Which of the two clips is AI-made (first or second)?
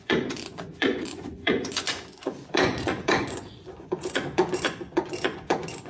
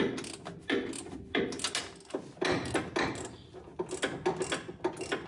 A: first